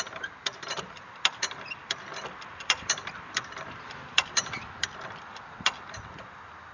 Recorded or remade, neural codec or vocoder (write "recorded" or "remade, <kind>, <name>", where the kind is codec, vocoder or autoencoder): remade, vocoder, BigVGAN v2